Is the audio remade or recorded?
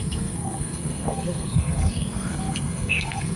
remade